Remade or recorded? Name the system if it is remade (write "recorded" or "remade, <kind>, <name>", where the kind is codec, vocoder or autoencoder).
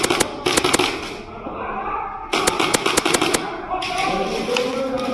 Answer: recorded